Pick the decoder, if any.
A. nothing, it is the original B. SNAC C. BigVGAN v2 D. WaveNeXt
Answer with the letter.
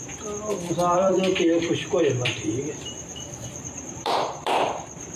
C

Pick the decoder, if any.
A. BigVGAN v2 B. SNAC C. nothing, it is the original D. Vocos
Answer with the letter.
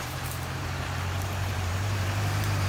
A